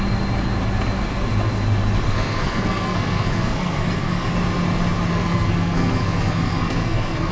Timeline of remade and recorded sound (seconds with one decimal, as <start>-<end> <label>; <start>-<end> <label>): 0.0-2.1 recorded; 2.1-4.3 remade; 4.3-5.1 recorded; 5.1-7.3 remade

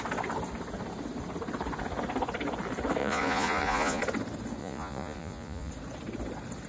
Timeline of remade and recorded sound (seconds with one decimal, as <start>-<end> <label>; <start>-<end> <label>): 0.0-3.0 recorded; 3.0-4.0 remade; 4.0-4.6 recorded; 4.6-5.7 remade; 5.7-6.7 recorded

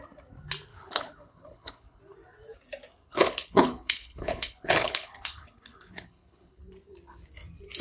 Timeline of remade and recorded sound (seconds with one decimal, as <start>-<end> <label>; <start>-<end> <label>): 0.0-0.7 recorded; 0.7-2.0 remade; 2.0-3.0 recorded; 3.0-6.6 remade; 6.6-7.8 recorded